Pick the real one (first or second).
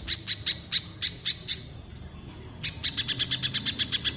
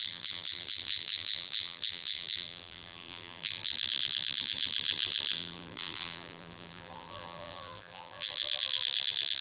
first